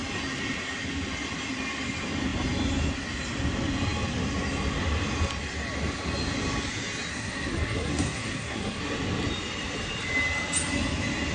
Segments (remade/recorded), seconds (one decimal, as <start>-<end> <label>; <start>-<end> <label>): 0.0-7.1 recorded; 7.1-8.8 remade; 8.8-11.3 recorded